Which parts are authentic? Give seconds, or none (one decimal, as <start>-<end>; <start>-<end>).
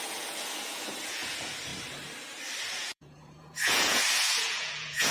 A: 1.7-2.7